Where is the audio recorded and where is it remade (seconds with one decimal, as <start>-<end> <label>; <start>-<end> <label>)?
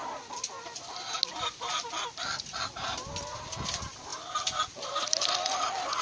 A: 0.0-6.0 recorded